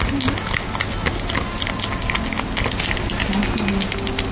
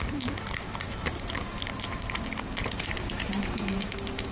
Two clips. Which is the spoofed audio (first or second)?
second